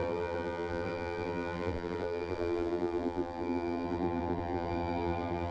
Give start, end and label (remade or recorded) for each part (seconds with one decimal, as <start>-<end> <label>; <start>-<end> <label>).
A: 0.0-5.5 remade